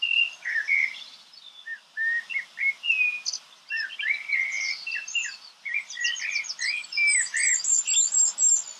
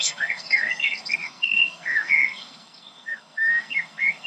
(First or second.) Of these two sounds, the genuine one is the first